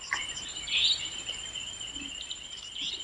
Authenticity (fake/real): fake